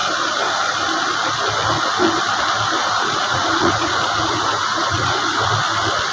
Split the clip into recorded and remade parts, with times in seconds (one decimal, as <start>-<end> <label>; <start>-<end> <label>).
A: 0.0-2.8 recorded; 2.8-5.5 remade; 5.5-6.1 recorded